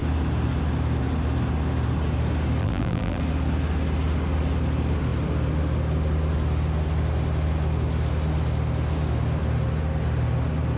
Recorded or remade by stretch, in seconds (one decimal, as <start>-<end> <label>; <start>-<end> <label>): 0.0-2.6 recorded; 2.6-3.2 remade; 3.2-10.8 recorded

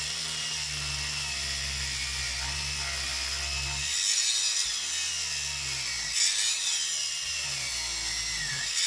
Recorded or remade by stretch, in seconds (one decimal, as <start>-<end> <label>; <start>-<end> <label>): 0.0-8.9 recorded

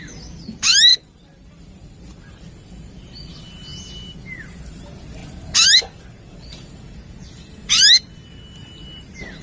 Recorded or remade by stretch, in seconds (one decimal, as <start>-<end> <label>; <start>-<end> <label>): 0.0-0.9 recorded; 0.9-1.6 remade; 1.6-9.4 recorded

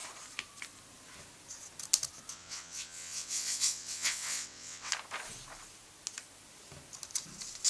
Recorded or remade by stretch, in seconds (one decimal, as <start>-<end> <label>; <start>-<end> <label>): 0.0-2.3 recorded; 2.3-4.9 remade; 4.9-7.7 recorded

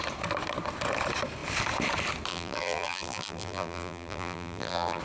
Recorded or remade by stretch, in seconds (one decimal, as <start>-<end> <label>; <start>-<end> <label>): 0.0-2.3 recorded; 2.3-5.0 remade

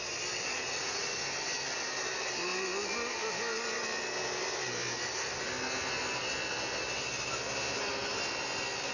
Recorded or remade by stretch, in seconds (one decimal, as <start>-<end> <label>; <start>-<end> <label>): 0.0-0.5 recorded; 0.5-1.0 remade; 1.0-8.9 recorded